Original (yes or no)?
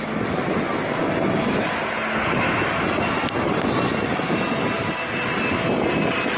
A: yes